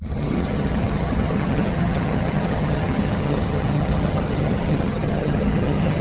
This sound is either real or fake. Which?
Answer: fake